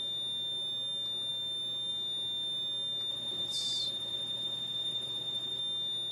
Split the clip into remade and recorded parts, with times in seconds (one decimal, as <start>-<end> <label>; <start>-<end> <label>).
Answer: 0.0-3.1 recorded; 3.1-5.6 remade; 5.6-6.1 recorded